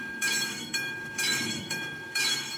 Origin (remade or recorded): remade